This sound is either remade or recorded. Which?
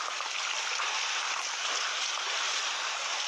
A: recorded